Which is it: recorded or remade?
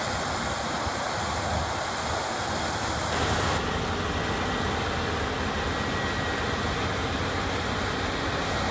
recorded